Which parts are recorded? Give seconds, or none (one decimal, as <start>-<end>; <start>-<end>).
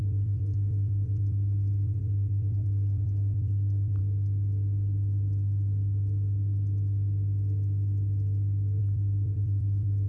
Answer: 4.0-8.8